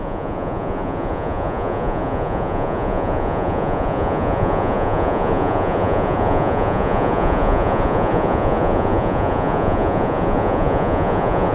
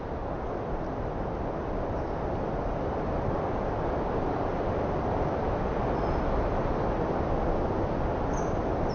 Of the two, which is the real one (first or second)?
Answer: second